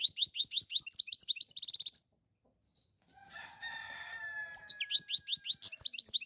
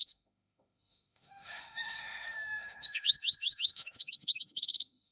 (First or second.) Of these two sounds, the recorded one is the first